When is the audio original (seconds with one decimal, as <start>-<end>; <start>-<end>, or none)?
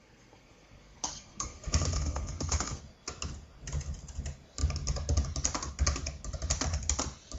2.8-7.4